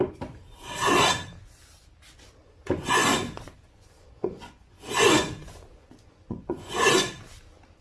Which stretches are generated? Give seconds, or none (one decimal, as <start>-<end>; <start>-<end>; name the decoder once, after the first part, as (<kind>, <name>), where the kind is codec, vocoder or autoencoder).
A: 2.4-7.1 (vocoder, Vocos)